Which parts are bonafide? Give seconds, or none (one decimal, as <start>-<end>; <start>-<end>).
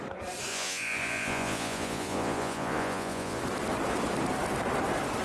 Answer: 0.0-0.5; 3.4-5.2